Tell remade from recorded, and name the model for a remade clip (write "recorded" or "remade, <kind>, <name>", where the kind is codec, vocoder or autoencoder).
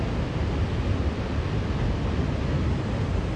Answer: recorded